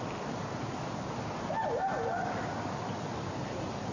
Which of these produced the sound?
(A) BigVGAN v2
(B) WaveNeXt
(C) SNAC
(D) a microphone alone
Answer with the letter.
D